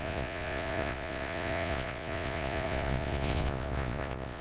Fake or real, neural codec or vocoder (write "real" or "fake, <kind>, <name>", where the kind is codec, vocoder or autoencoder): fake, vocoder, Vocos